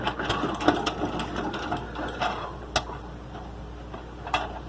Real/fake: real